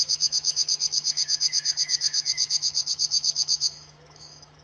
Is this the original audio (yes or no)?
no